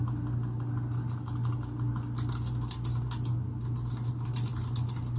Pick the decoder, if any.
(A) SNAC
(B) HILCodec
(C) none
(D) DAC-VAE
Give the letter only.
C